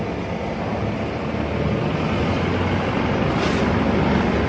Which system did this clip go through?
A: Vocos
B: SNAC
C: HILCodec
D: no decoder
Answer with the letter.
D